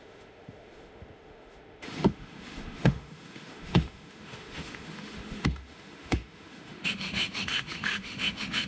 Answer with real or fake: fake